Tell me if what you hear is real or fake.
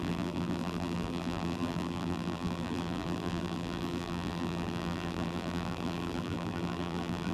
fake